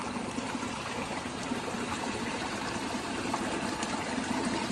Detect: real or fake real